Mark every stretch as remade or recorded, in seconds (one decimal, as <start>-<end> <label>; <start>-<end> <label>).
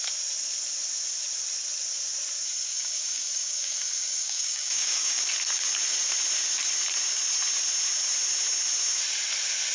0.0-2.7 recorded; 2.7-5.3 remade; 5.3-9.7 recorded